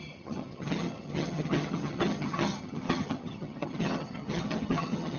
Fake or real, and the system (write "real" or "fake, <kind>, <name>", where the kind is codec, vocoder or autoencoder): fake, vocoder, HiFi-GAN